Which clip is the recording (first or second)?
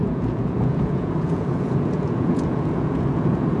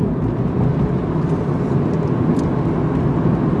second